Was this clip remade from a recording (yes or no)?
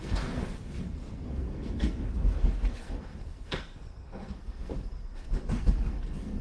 yes